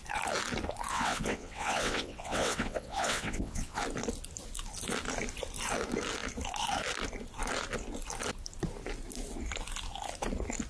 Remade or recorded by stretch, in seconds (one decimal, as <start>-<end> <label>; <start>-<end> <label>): 0.0-0.9 recorded; 0.9-3.8 remade; 3.8-10.7 recorded